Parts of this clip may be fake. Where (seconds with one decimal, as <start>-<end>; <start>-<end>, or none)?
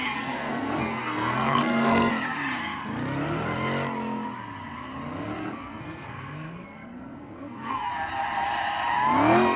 0.0-2.1; 5.4-7.9